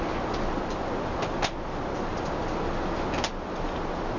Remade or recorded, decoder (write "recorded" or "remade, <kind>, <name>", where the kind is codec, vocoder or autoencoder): recorded